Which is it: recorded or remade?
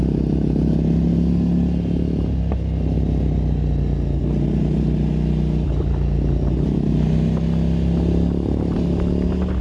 recorded